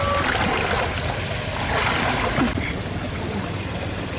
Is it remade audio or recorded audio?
recorded